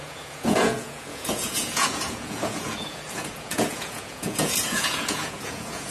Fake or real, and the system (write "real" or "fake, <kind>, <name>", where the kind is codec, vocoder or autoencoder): fake, vocoder, Vocos